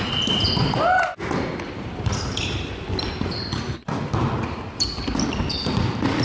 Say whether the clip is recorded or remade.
recorded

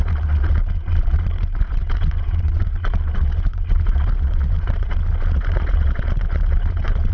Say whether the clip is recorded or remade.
remade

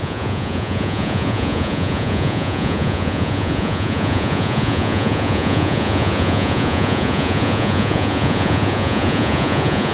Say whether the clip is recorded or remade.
remade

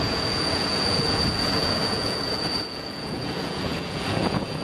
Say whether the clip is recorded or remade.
remade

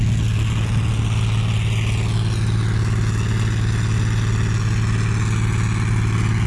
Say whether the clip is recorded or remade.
recorded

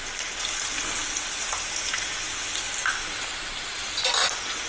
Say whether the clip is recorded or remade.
recorded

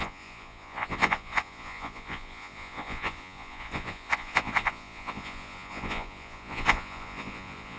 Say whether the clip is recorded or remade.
remade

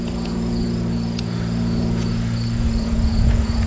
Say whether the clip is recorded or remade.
remade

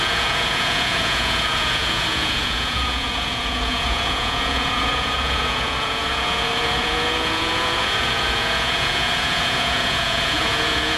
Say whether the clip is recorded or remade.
remade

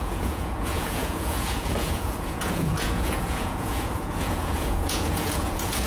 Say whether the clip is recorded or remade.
remade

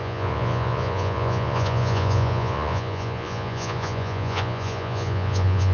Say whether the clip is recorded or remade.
remade